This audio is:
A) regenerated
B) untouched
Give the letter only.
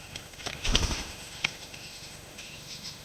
A